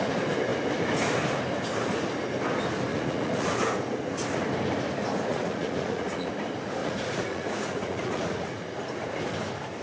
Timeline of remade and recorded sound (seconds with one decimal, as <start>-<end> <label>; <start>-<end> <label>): 0.0-2.9 recorded; 2.9-3.5 remade; 3.5-5.3 recorded; 5.3-6.3 remade; 6.3-6.8 recorded; 6.8-8.6 remade; 8.6-9.8 recorded